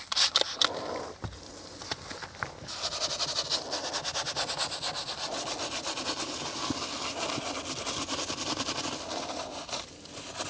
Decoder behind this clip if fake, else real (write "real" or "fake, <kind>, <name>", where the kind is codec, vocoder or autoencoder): real